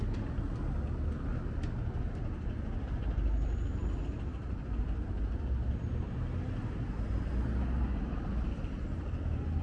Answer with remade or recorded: recorded